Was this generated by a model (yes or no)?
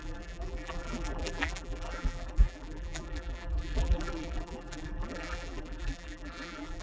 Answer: yes